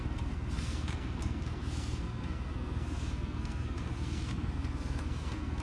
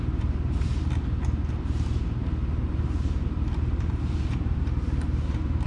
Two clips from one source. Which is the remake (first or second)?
first